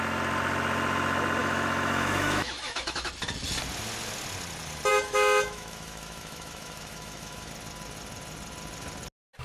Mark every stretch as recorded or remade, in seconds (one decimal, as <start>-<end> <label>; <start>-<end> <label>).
0.0-1.4 recorded; 1.4-3.1 remade; 3.1-4.9 recorded; 4.9-7.5 remade; 7.5-9.4 recorded